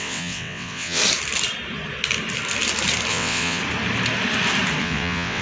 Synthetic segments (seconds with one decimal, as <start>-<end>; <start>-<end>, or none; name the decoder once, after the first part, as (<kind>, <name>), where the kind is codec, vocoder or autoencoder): 0.0-1.0 (vocoder, WaveNeXt); 3.1-3.6; 4.8-5.4